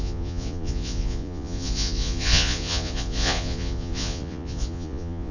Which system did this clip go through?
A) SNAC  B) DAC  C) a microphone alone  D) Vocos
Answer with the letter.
D